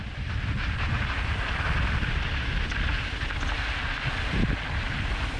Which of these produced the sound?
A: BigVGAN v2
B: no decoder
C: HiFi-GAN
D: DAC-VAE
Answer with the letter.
B